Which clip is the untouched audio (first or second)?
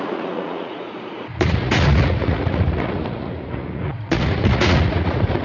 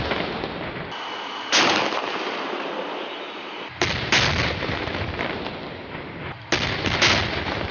second